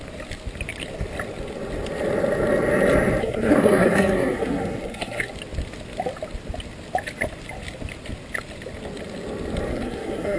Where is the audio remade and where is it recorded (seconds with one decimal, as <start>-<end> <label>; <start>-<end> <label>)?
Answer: 0.0-3.2 recorded; 3.2-5.3 remade; 5.3-9.7 recorded; 9.7-10.4 remade